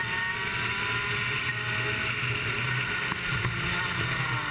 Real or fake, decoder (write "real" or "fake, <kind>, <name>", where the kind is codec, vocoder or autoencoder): real